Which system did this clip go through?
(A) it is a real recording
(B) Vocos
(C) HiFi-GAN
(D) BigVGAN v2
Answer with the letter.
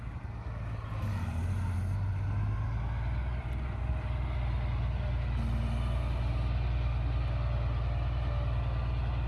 A